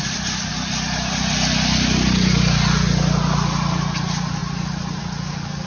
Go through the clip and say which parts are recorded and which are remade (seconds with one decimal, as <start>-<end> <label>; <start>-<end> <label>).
0.0-5.7 recorded